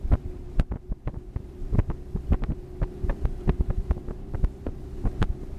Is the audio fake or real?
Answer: real